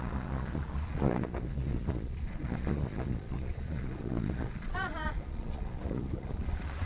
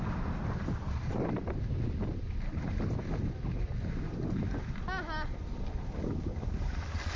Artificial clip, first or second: first